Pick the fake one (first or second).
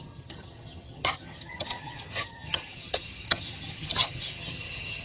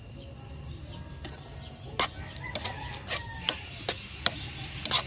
first